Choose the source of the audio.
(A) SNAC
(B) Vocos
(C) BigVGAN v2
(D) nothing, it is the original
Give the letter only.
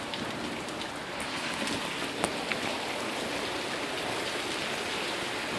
D